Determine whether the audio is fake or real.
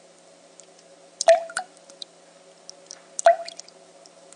real